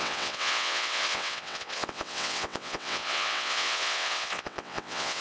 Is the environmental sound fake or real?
fake